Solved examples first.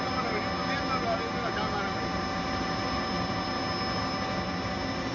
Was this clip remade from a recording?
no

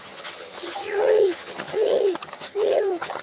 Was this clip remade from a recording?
yes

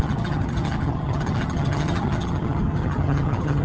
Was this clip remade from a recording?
yes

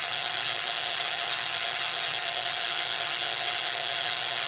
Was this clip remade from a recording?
yes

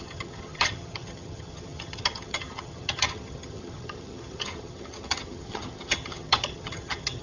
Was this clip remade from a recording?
yes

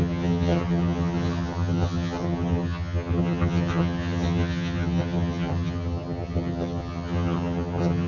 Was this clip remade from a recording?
yes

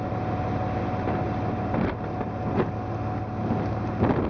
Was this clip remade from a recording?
no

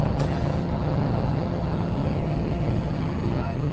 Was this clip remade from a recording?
yes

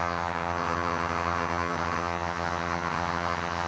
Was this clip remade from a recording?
yes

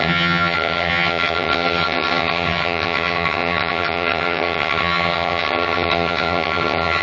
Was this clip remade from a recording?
yes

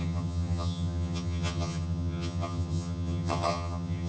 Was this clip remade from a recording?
yes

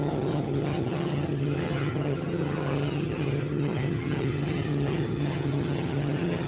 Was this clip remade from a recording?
yes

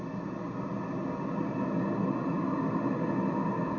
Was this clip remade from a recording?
no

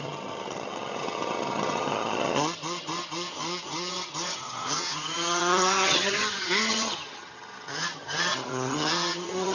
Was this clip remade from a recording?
yes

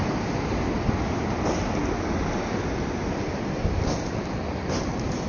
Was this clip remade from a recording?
no